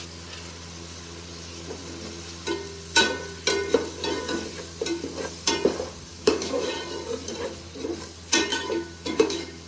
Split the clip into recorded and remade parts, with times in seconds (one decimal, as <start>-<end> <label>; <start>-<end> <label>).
0.0-6.1 recorded; 6.1-6.7 remade; 6.7-8.5 recorded; 8.5-9.7 remade